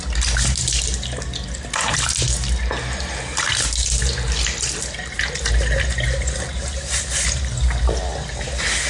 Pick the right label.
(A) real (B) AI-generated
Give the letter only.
A